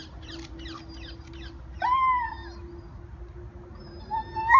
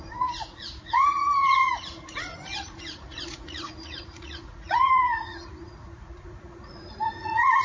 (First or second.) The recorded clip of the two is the first